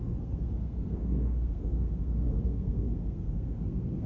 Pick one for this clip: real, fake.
fake